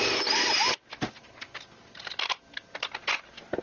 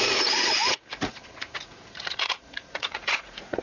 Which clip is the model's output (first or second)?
second